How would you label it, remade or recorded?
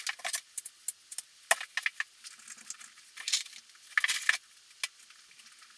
recorded